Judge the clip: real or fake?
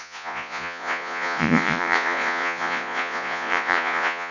fake